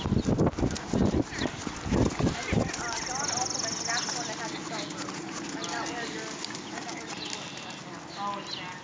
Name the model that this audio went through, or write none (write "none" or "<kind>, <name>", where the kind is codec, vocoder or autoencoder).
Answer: none